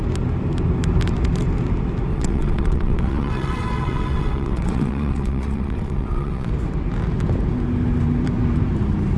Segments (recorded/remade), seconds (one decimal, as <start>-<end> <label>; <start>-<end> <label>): 0.0-2.1 recorded; 2.1-6.5 remade; 6.5-9.2 recorded